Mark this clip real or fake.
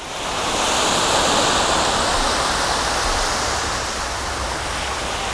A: real